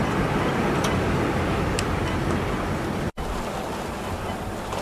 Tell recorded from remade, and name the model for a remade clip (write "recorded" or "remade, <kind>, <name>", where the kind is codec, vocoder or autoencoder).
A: recorded